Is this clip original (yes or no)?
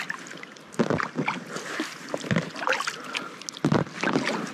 yes